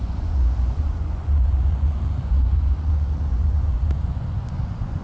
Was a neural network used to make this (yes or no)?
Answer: yes